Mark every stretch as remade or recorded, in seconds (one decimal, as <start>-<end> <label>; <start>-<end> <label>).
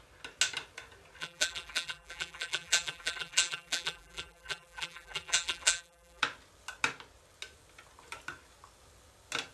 0.0-1.2 recorded; 1.2-6.2 remade; 6.2-9.5 recorded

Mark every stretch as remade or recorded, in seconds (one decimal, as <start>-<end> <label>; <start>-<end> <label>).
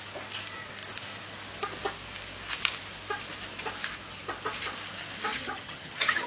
0.0-5.3 recorded; 5.3-6.3 remade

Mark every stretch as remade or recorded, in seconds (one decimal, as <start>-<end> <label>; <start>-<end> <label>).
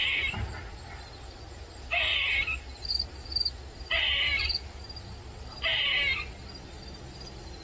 0.0-7.6 recorded